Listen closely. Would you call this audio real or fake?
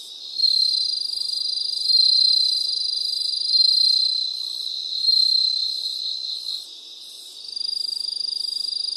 real